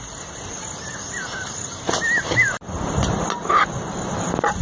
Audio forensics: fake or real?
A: real